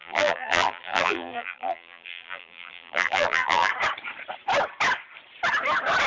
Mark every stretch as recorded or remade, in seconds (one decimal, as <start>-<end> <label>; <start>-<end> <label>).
0.0-3.7 remade; 3.7-6.1 recorded